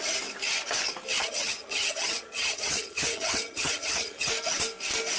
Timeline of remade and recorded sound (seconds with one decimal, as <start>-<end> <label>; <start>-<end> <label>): 0.0-1.2 recorded; 1.2-4.3 remade; 4.3-5.2 recorded